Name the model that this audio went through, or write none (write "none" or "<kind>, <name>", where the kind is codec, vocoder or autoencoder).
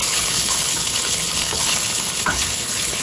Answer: codec, HILCodec